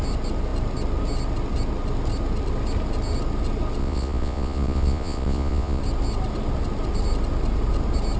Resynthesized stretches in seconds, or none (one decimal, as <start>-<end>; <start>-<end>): 3.8-5.8